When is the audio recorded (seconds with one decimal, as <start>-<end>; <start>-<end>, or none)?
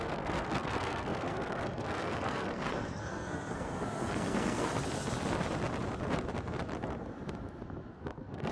4.7-7.9